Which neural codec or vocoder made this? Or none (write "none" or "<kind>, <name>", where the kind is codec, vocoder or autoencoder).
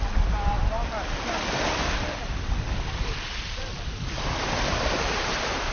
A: none